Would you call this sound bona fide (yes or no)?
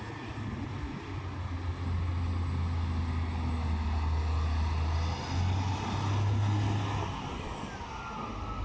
yes